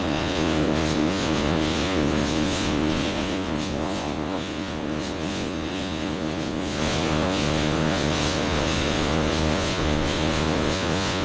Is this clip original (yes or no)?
no